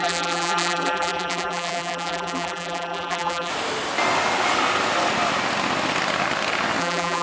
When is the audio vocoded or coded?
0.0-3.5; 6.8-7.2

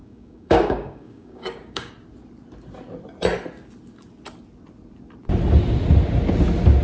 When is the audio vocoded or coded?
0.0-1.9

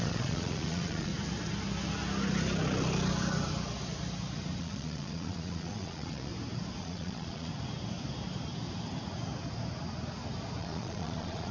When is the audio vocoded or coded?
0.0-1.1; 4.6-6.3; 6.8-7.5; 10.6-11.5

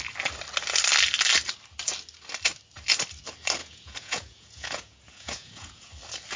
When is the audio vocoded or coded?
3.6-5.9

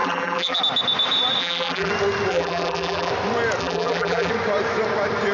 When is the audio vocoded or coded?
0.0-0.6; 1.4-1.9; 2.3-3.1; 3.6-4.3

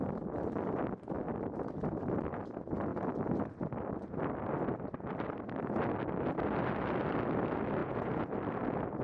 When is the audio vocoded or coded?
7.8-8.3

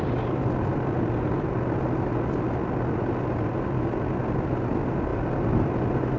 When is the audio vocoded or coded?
none